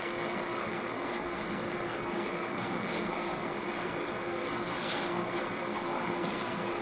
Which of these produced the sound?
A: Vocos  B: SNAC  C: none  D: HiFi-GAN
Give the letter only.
B